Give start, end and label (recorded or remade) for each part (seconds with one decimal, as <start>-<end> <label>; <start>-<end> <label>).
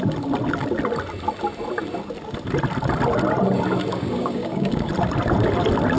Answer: 0.0-3.9 recorded; 3.9-4.9 remade; 4.9-6.0 recorded